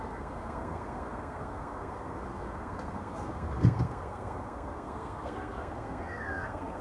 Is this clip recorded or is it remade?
remade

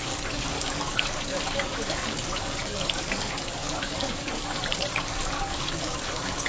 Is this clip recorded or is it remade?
remade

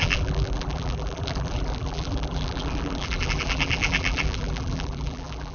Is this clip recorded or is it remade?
remade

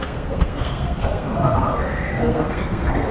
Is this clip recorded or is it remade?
remade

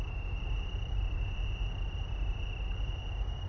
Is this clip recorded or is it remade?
recorded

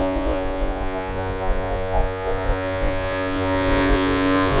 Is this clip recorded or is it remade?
remade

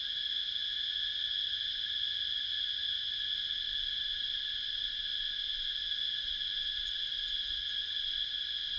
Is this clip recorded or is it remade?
recorded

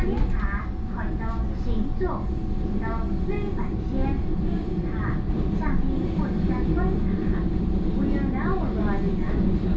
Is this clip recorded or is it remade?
recorded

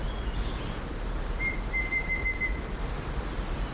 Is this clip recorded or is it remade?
recorded